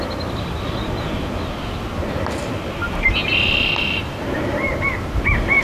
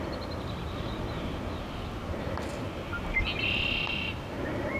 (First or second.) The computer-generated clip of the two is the second